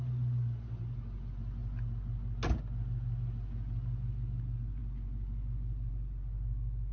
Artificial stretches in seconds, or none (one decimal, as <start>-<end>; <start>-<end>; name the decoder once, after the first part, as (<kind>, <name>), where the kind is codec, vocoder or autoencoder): none